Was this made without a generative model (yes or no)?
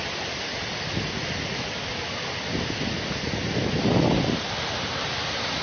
yes